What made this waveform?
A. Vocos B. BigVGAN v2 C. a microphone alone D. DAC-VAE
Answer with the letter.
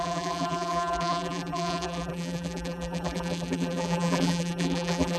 B